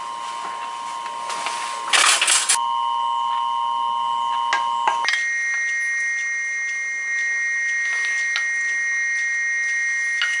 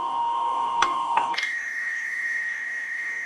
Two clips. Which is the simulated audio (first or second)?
second